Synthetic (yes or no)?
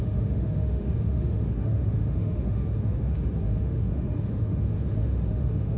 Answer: yes